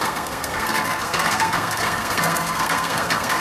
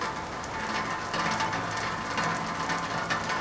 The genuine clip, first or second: second